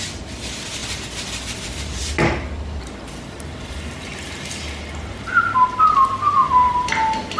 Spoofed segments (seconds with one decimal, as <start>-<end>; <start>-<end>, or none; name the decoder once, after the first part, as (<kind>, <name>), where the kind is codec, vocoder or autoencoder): 0.0-0.8 (vocoder, BigVGAN v2); 3.0-7.4